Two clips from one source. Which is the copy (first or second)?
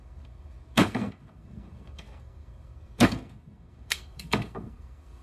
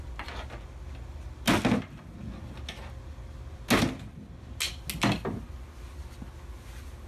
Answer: first